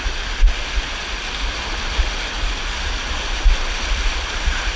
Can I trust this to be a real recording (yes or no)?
yes